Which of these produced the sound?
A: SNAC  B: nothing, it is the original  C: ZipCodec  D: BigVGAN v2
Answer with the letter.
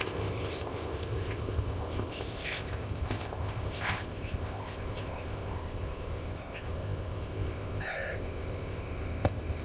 C